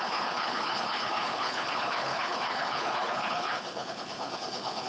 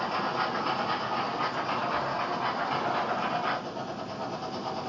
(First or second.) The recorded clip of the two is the second